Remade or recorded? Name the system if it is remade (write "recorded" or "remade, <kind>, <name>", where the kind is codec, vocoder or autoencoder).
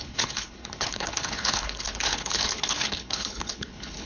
remade, codec, HILCodec